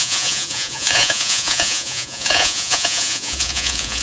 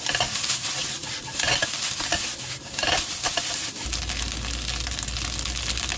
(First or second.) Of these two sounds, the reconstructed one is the first